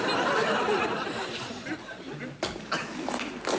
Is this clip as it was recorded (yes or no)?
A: yes